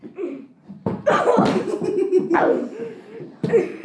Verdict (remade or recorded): recorded